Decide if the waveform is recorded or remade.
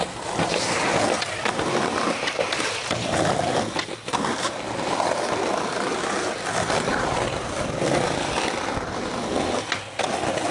recorded